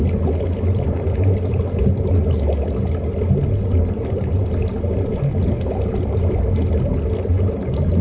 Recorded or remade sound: recorded